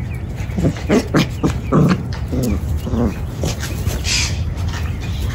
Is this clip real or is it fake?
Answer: real